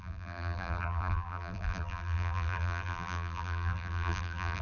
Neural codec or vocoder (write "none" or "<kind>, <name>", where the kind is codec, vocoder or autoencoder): vocoder, BigVGAN v2